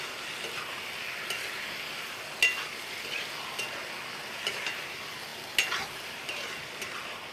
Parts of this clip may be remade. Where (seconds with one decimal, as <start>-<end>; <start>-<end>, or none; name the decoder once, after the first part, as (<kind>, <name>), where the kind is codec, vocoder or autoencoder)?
none